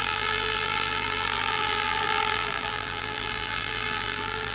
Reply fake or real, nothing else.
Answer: fake